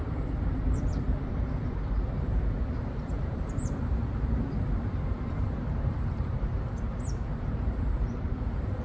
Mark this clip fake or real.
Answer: fake